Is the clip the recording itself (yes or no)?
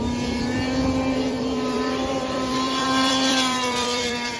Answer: no